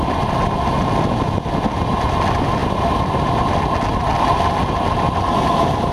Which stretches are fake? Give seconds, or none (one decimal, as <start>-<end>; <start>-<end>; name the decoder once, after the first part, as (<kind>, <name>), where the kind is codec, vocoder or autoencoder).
none